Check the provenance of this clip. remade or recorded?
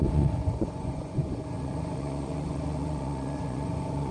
remade